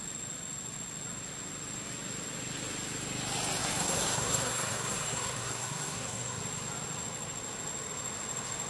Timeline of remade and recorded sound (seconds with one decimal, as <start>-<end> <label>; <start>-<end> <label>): 0.0-3.6 recorded; 3.6-6.4 remade; 6.4-8.7 recorded